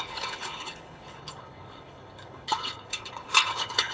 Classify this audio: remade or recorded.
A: remade